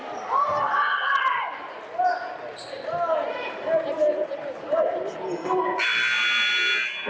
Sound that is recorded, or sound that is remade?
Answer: recorded